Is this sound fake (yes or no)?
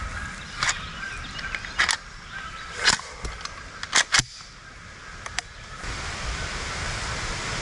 no